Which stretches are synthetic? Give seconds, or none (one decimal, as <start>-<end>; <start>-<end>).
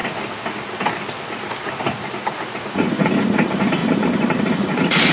2.7-3.8; 4.4-5.1